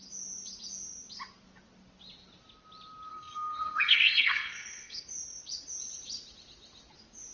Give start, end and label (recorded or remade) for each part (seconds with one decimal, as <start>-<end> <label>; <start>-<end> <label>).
0.0-3.1 recorded; 3.1-5.0 remade; 5.0-7.3 recorded